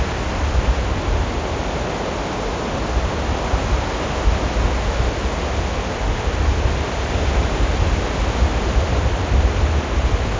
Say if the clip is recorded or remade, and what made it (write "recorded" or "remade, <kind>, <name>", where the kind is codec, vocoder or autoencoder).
recorded